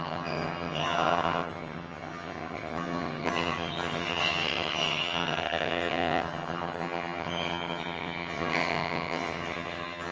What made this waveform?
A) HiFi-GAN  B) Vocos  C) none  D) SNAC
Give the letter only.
A